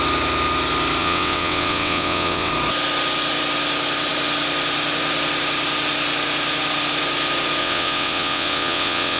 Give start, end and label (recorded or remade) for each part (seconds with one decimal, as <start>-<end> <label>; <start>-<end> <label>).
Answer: 0.0-1.0 recorded; 1.0-2.5 remade; 2.5-7.6 recorded; 7.6-9.2 remade